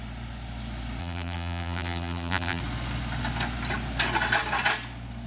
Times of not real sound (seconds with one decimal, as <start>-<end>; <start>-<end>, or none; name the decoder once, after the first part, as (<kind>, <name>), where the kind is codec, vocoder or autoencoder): 1.0-2.6 (vocoder, BigVGAN v2)